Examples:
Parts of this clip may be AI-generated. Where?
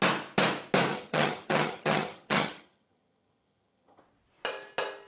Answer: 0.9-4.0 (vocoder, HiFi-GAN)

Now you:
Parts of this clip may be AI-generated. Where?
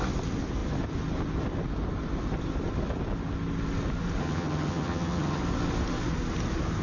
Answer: 4.2-5.4 (vocoder, HiFi-GAN)